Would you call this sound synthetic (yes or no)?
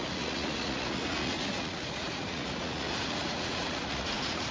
yes